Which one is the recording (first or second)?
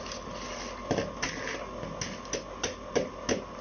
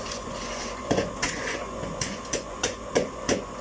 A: first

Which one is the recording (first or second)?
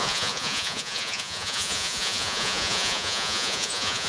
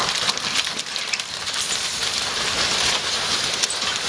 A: second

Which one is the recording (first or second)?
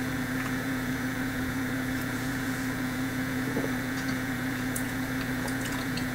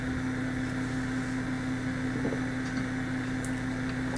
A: second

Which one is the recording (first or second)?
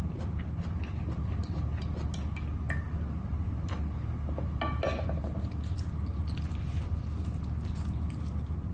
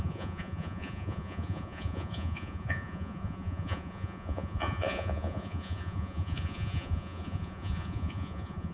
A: first